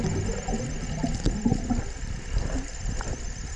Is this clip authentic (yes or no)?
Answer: yes